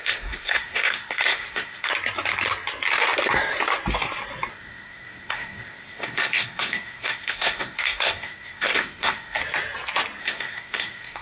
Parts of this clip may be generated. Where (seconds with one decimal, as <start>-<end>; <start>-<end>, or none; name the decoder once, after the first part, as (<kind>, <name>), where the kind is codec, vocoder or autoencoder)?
0.0-1.9 (codec, SNAC); 4.5-9.4; 10.2-11.2